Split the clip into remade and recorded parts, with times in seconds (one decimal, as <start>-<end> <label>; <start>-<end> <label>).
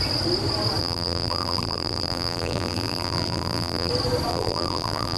0.0-0.8 recorded; 0.8-3.9 remade; 3.9-4.3 recorded; 4.3-5.2 remade